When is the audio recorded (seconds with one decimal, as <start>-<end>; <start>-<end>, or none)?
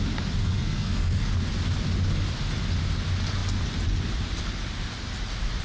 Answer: 0.0-0.4; 1.3-5.6